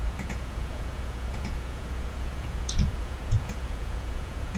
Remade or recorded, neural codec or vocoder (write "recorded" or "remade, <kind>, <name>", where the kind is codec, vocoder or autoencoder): remade, vocoder, Vocos